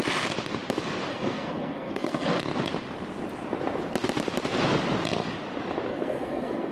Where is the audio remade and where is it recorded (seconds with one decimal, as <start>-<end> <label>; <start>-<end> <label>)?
0.0-1.1 recorded; 1.1-2.4 remade; 2.4-5.9 recorded; 5.9-6.7 remade